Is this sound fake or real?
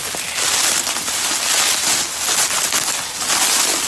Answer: real